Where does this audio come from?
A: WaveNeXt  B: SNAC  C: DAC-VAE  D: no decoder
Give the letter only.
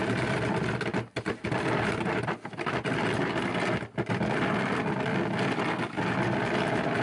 D